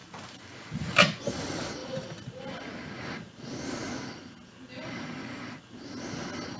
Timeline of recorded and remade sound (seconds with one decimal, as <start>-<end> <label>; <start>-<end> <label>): 0.0-0.7 remade; 0.7-1.8 recorded; 1.8-2.9 remade; 2.9-6.6 recorded